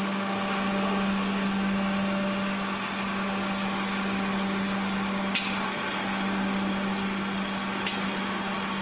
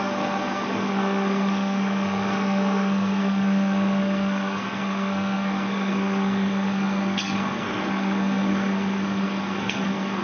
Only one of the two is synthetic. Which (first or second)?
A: second